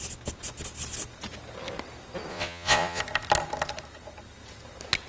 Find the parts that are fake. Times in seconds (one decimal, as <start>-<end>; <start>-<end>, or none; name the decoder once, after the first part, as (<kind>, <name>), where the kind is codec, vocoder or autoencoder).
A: 2.3-3.0 (vocoder, Vocos)